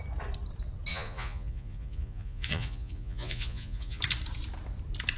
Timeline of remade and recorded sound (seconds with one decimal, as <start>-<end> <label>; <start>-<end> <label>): 0.0-0.9 recorded; 0.9-4.0 remade; 4.0-5.2 recorded